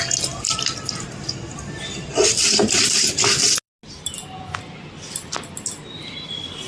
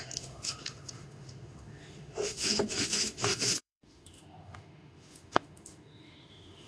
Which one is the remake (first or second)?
second